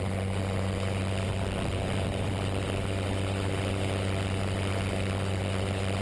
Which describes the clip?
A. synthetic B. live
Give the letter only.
B